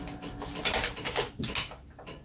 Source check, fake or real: real